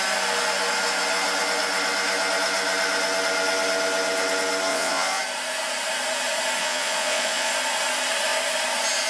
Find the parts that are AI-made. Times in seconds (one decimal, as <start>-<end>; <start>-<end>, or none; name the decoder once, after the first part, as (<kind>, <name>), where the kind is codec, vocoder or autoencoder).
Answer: 4.7-5.2 (vocoder, Vocos); 6.6-7.5